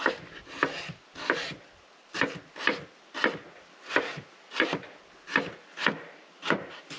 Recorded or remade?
recorded